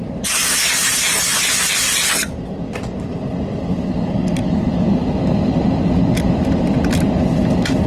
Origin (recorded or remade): remade